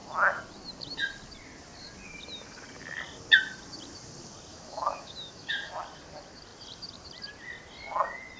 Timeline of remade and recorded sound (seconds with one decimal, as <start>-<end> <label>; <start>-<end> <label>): 0.0-4.5 recorded; 4.5-5.7 remade; 5.7-8.4 recorded